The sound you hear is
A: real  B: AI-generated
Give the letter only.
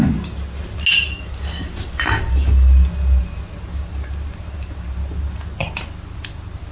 A